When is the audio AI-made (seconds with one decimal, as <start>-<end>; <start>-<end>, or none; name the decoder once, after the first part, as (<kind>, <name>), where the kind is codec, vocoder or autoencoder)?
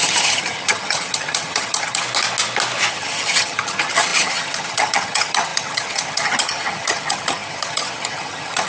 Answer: 0.0-2.0 (vocoder, HiFi-GAN); 2.9-8.7